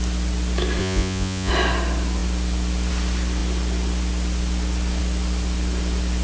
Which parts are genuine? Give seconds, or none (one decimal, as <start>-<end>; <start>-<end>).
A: 0.0-0.8; 1.5-6.2